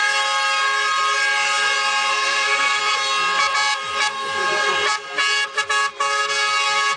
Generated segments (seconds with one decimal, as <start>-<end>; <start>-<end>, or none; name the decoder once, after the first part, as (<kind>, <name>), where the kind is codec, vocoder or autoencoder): 2.1-2.8 (codec, SNAC)